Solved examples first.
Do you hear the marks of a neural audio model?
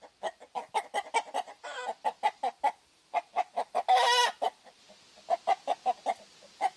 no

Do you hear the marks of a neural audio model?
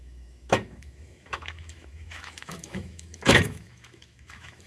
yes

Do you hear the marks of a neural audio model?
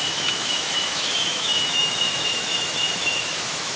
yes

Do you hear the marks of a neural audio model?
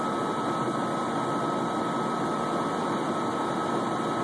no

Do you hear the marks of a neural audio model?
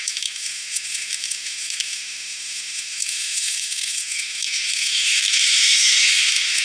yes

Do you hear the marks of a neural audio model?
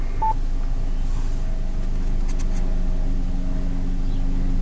no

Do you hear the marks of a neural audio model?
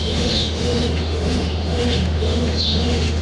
yes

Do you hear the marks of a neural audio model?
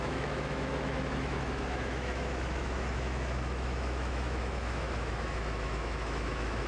yes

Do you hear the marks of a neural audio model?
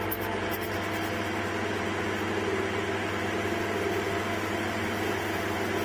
no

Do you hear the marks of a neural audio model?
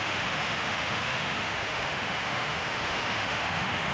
yes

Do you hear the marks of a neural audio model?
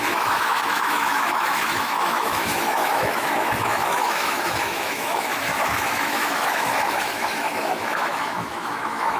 yes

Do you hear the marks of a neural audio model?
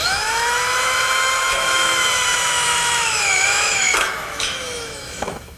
yes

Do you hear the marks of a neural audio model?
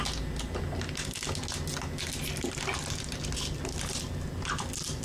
no